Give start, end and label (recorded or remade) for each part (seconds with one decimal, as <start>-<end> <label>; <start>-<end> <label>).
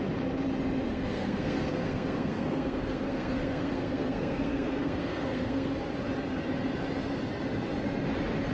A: 0.0-0.9 recorded; 0.9-5.7 remade; 5.7-8.5 recorded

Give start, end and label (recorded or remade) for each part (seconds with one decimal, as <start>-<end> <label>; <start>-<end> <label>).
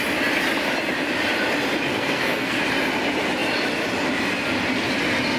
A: 0.0-1.9 recorded; 1.9-2.6 remade; 2.6-5.4 recorded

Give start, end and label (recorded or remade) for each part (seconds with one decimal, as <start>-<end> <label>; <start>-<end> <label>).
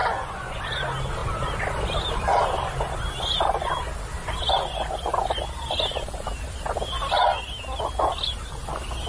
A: 0.0-0.6 remade; 0.6-9.1 recorded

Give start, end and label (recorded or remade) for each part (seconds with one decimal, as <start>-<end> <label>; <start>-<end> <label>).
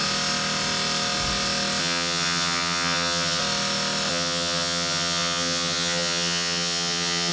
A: 0.0-1.8 recorded; 1.8-3.4 remade; 3.4-4.1 recorded; 4.1-7.3 remade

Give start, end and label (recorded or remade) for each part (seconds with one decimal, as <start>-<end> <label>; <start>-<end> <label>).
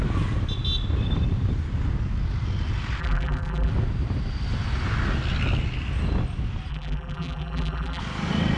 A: 0.0-3.0 recorded; 3.0-3.7 remade; 3.7-6.7 recorded; 6.7-8.0 remade; 8.0-8.6 recorded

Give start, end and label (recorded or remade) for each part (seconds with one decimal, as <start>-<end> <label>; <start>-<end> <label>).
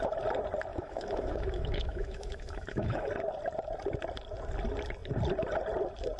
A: 0.0-0.7 recorded; 0.7-3.1 remade; 3.1-6.2 recorded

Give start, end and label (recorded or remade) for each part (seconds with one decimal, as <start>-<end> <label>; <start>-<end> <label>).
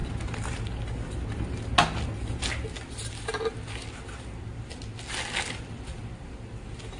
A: 0.0-7.0 recorded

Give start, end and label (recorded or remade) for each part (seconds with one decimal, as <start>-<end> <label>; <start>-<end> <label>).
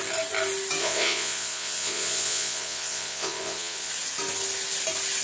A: 0.0-0.8 recorded; 0.8-3.9 remade; 3.9-5.2 recorded